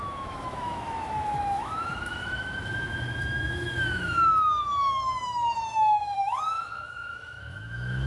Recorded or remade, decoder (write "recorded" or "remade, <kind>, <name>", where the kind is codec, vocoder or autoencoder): remade, autoencoder, DAC-VAE